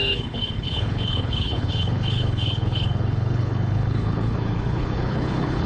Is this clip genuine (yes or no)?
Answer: no